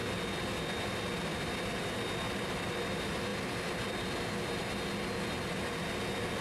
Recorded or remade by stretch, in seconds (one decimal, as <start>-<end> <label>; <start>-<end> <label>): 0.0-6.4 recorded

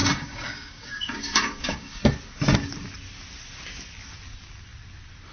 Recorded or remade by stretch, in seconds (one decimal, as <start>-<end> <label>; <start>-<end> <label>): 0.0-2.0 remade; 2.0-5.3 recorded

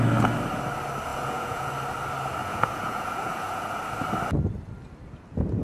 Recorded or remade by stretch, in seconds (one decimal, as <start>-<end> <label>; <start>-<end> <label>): 0.0-1.1 recorded; 1.1-1.7 remade; 1.7-2.4 recorded; 2.4-3.8 remade; 3.8-5.6 recorded

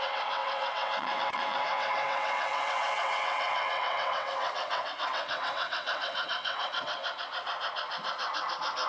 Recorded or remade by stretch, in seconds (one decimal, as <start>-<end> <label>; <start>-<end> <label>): 0.0-7.0 remade; 7.0-8.9 recorded

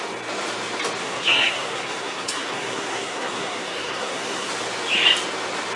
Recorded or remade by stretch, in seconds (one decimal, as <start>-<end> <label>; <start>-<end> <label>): 0.0-1.0 recorded; 1.0-4.5 remade; 4.5-5.8 recorded

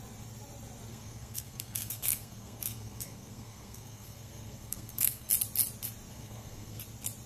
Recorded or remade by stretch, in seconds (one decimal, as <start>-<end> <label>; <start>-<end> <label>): 0.0-0.9 recorded; 0.9-5.3 remade; 5.3-6.1 recorded; 6.1-6.8 remade; 6.8-7.3 recorded

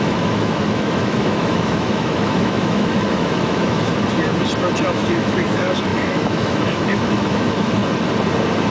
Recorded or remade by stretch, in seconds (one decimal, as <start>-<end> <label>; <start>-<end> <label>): 0.0-3.9 remade; 3.9-4.9 recorded; 4.9-7.8 remade; 7.8-8.7 recorded